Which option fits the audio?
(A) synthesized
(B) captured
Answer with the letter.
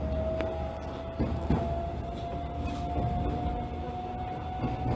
B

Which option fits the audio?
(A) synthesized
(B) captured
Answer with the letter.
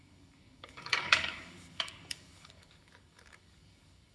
A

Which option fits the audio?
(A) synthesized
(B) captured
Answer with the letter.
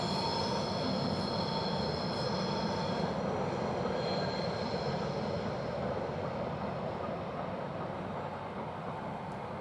B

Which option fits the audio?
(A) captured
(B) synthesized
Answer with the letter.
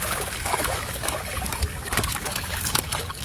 B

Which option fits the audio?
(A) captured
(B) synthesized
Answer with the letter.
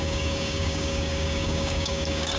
B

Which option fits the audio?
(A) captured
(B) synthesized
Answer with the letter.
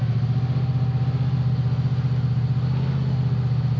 A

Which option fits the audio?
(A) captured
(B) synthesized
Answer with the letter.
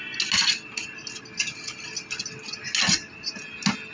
A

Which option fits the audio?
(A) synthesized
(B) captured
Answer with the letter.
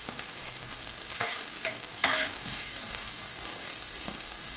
A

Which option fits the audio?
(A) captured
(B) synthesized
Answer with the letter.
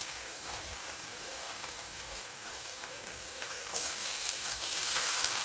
B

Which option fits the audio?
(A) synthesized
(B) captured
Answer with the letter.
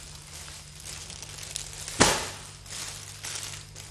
B